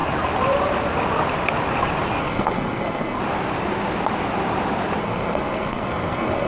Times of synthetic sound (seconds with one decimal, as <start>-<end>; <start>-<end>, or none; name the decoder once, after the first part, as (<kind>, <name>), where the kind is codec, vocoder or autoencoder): 2.2-3.2 (codec, SNAC); 5.0-6.5